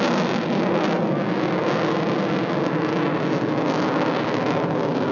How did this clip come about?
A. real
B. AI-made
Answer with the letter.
A